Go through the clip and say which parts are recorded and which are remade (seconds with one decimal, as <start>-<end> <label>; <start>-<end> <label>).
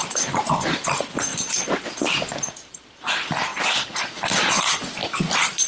0.0-0.9 remade; 0.9-1.3 recorded; 1.3-3.1 remade; 3.1-5.0 recorded; 5.0-5.7 remade